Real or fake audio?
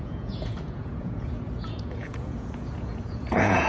fake